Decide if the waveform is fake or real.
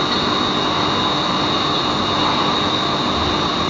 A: real